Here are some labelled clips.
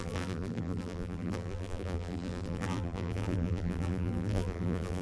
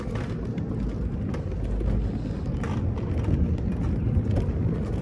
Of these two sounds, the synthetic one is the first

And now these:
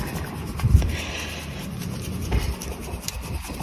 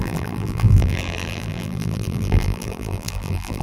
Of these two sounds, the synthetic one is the second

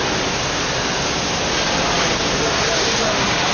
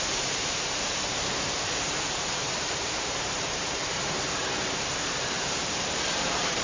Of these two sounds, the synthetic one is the second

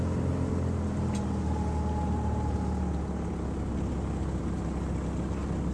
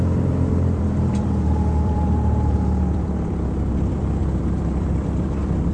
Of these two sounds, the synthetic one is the second